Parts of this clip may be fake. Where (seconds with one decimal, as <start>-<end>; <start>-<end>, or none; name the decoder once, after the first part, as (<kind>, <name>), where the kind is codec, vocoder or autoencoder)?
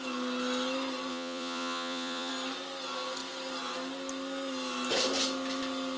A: 1.1-2.3 (vocoder, Vocos)